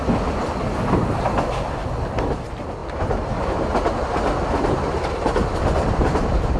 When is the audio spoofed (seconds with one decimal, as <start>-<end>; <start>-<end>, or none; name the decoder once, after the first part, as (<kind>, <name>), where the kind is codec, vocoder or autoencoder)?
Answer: none